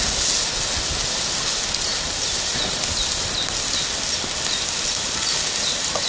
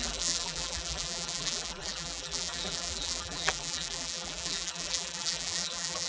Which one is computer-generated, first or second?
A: second